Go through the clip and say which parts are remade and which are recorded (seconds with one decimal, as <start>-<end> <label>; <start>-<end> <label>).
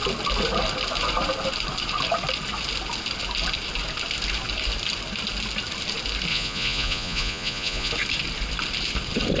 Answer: 0.0-6.3 recorded; 6.3-7.9 remade; 7.9-9.4 recorded